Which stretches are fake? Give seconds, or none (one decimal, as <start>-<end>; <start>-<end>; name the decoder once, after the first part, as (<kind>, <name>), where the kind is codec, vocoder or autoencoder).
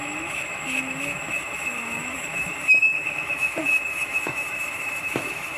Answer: 0.0-5.6 (autoencoder, DAC-VAE)